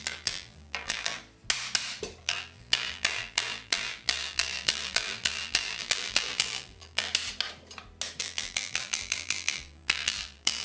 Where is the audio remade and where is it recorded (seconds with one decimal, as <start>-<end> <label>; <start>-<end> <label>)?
0.0-1.2 remade; 1.2-2.2 recorded; 2.2-7.1 remade; 7.1-8.2 recorded; 8.2-10.6 remade